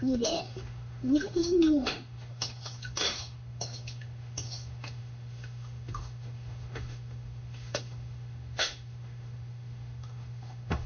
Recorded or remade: remade